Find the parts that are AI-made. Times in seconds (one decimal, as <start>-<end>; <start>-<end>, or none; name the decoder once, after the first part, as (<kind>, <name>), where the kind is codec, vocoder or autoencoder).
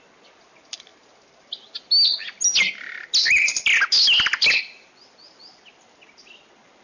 none